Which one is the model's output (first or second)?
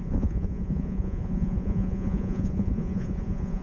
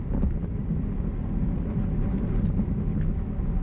first